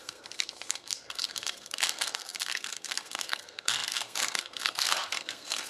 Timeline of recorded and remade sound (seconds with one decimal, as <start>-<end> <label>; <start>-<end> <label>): 0.0-5.7 remade